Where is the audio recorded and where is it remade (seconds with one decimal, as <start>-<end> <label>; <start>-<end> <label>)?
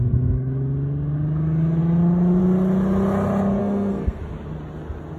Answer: 0.0-3.6 recorded; 3.6-4.2 remade; 4.2-5.2 recorded